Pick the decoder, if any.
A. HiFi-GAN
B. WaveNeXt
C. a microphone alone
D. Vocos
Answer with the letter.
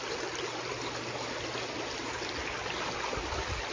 C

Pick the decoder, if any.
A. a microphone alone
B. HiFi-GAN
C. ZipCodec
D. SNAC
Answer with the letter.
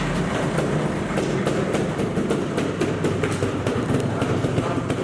A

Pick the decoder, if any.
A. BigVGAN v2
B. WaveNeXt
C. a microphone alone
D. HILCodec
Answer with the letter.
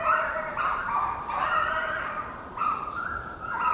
A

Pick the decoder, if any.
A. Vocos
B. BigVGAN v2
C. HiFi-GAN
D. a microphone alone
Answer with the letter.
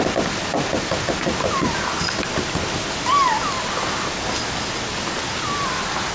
D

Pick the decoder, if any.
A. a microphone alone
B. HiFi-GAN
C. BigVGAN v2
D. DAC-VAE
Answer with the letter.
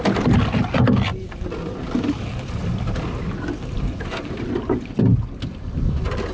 A